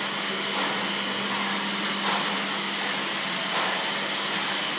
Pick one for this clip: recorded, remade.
recorded